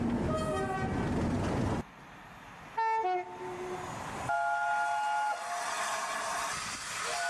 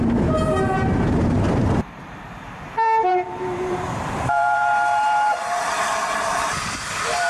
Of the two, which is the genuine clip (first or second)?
first